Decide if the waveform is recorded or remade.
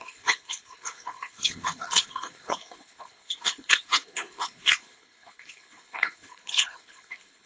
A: remade